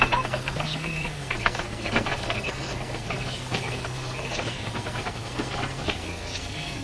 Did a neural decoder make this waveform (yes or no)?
yes